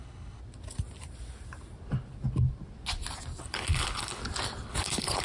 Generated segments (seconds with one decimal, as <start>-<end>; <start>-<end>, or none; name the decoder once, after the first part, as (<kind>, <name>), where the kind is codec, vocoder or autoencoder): 0.0-0.4 (codec, HILCodec); 3.4-4.2; 4.7-5.2